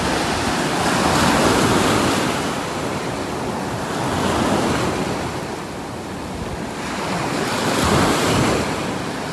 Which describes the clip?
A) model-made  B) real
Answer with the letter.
B